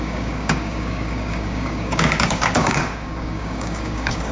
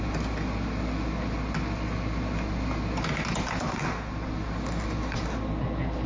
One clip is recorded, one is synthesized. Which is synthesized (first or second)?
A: first